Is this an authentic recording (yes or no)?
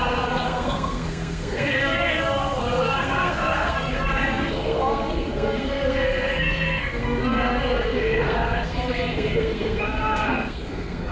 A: no